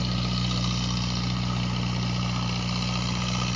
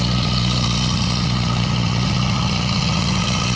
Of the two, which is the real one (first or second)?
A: first